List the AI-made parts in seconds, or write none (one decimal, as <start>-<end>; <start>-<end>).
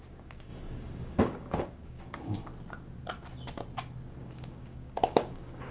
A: 0.0-2.4; 4.2-5.7